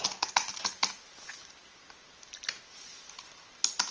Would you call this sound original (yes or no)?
yes